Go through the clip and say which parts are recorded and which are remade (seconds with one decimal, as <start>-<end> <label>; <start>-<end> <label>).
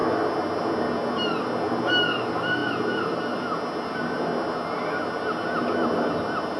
0.0-6.6 recorded